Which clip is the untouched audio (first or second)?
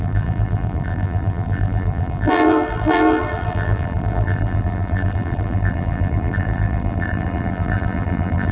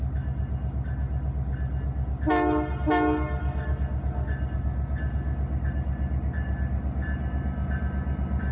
second